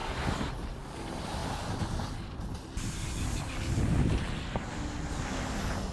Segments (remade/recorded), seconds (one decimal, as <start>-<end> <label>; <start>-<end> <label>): 0.0-5.9 recorded